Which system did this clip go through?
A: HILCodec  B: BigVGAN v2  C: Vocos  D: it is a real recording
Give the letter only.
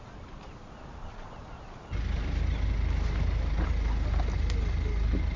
D